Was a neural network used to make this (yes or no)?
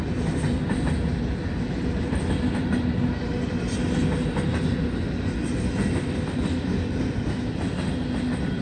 no